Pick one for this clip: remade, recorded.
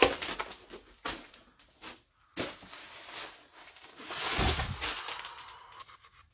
recorded